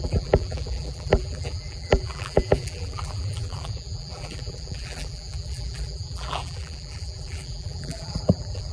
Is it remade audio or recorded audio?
remade